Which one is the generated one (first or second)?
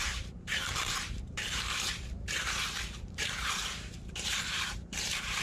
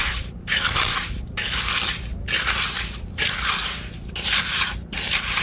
first